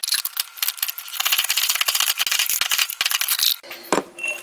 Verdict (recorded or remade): recorded